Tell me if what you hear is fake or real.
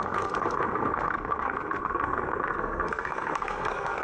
fake